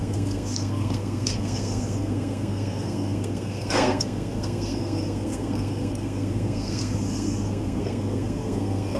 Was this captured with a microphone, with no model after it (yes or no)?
no